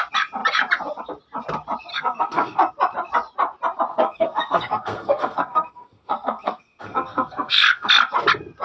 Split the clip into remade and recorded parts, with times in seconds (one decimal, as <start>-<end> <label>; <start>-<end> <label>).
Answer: 0.0-1.9 recorded; 1.9-2.7 remade; 2.7-3.9 recorded; 3.9-7.9 remade; 7.9-8.6 recorded